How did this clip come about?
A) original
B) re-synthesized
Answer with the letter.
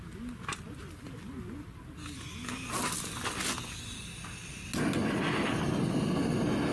A